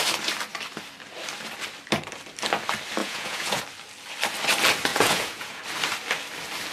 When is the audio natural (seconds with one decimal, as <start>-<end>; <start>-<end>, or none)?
0.0-3.0; 3.6-4.9; 5.6-6.7